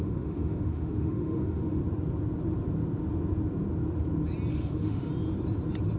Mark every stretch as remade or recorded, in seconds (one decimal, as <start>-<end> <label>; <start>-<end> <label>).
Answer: 0.0-1.8 remade; 1.8-4.5 recorded; 4.5-5.1 remade; 5.1-6.0 recorded